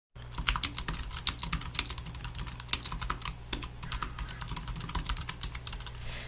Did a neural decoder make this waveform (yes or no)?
no